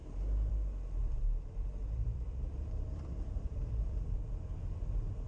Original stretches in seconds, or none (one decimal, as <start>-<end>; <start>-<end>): 0.0-1.0; 4.2-5.3